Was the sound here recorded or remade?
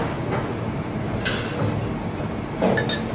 recorded